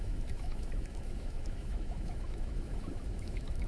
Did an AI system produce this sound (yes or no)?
yes